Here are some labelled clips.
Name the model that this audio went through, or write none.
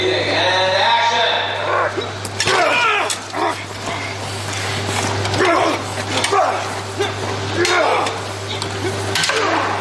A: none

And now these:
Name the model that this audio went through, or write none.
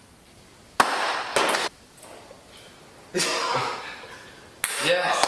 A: none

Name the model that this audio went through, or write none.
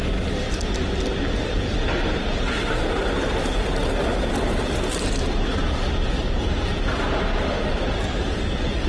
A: none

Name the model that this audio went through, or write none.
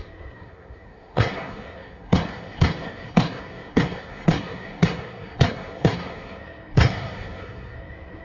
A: codec, SNAC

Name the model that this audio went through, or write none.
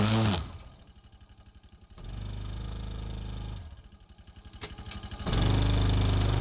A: none